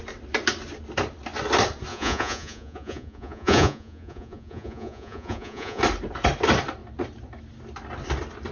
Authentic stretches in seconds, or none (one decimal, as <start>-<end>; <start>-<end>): 0.0-1.9; 5.8-8.5